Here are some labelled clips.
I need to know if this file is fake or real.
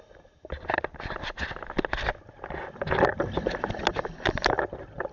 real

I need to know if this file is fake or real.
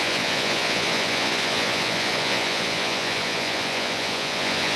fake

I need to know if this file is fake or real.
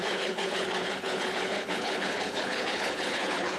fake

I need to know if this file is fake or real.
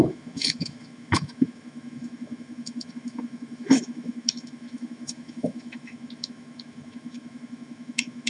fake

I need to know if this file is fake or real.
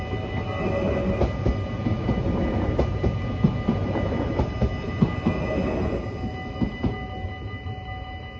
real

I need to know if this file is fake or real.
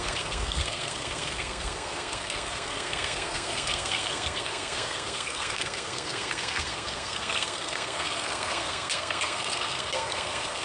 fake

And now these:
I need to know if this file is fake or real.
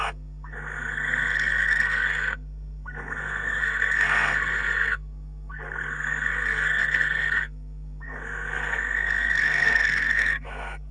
fake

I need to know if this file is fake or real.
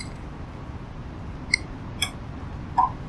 real